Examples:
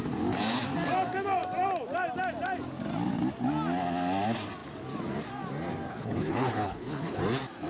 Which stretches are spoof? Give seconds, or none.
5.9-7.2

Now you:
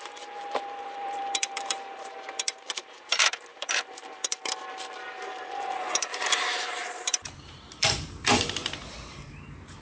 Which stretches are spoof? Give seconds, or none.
0.0-8.6